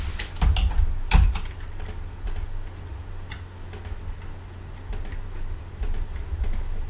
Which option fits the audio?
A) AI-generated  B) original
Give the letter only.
B